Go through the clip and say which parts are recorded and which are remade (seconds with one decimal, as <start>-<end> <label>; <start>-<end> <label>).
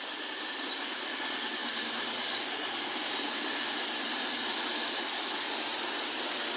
0.0-1.6 recorded; 1.6-4.3 remade; 4.3-6.6 recorded